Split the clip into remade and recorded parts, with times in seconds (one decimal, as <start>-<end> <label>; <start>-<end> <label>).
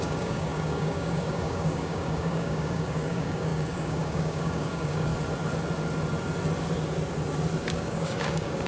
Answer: 0.0-5.1 remade; 5.1-7.7 recorded; 7.7-8.7 remade